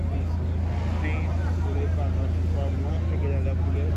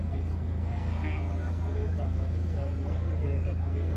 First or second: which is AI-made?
second